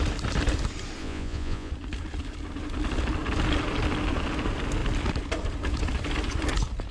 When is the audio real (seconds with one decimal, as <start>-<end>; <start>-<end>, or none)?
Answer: 0.0-1.0; 1.7-6.9